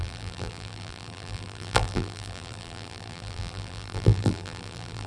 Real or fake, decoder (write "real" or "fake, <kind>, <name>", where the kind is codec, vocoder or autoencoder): fake, vocoder, BigVGAN v2